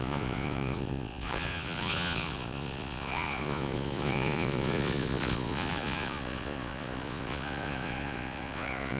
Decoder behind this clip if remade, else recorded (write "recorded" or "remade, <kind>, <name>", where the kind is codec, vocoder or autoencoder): remade, vocoder, Vocos